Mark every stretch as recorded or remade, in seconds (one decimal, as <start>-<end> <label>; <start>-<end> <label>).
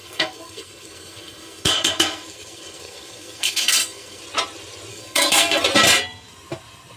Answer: 0.0-4.2 remade; 4.2-4.9 recorded; 4.9-5.6 remade; 5.6-7.0 recorded